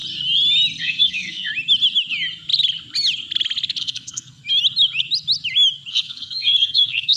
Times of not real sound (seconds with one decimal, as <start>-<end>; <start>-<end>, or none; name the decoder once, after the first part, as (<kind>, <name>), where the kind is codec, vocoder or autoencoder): 0.8-1.5 (codec, SNAC); 3.8-4.4; 5.9-7.2